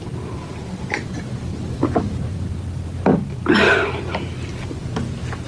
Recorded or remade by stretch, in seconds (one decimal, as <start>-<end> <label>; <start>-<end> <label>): 0.0-5.5 recorded